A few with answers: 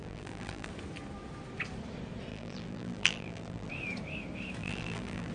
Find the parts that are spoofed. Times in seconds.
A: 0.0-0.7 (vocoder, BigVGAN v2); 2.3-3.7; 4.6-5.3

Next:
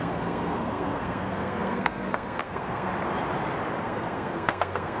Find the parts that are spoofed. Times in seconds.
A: 0.0-2.9 (codec, SNAC); 3.8-5.0